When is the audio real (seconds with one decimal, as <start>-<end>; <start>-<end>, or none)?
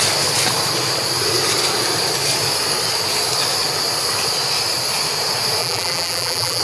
0.0-5.6